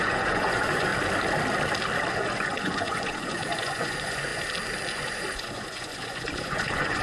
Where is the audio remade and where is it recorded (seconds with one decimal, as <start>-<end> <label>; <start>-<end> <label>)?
0.0-0.9 remade; 0.9-2.1 recorded; 2.1-4.3 remade; 4.3-4.9 recorded; 4.9-7.0 remade